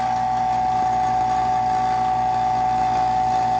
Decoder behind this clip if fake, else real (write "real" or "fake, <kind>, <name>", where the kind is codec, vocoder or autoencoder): real